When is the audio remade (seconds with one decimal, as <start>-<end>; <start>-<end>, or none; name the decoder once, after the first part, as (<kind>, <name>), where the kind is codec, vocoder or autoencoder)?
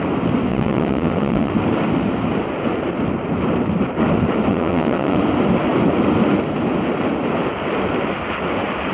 0.5-1.5 (vocoder, WaveNeXt); 4.5-5.2